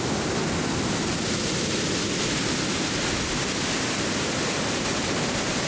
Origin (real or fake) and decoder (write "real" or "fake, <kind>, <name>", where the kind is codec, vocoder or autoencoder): real